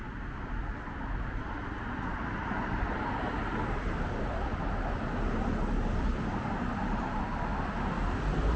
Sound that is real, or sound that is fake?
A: real